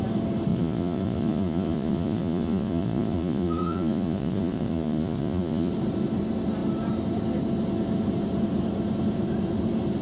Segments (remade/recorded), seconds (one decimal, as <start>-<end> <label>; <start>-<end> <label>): 0.0-0.5 recorded; 0.5-5.7 remade; 5.7-10.0 recorded